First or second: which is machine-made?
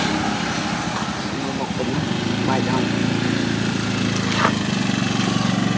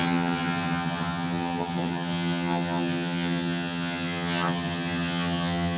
second